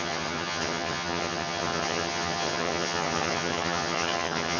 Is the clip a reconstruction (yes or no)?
yes